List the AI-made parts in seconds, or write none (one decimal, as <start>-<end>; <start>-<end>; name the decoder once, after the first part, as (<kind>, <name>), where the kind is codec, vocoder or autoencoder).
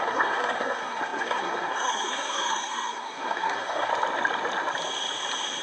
0.0-3.9 (codec, SNAC)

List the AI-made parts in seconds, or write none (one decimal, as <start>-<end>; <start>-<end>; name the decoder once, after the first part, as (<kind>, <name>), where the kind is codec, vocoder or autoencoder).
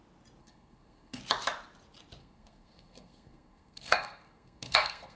0.4-1.2 (codec, SNAC); 2.2-5.2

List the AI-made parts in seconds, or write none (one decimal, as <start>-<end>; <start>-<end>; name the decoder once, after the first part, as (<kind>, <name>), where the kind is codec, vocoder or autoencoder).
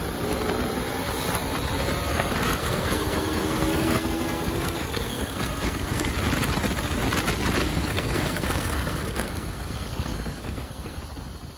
2.1-6.1 (codec, SNAC); 7.6-11.0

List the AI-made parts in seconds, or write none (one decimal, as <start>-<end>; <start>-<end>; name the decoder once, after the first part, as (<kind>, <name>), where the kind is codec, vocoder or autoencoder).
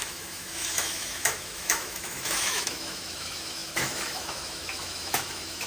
0.0-5.7 (autoencoder, DAC-VAE)